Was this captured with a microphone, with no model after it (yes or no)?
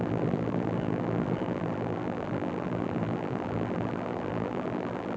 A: no